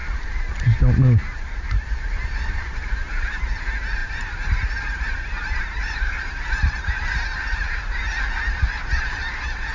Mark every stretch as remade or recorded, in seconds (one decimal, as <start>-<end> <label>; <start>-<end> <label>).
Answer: 0.0-0.6 remade; 0.6-1.2 recorded; 1.2-2.1 remade; 2.1-4.0 recorded; 4.0-7.9 remade; 7.9-9.7 recorded